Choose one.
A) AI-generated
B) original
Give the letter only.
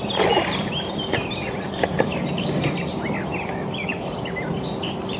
B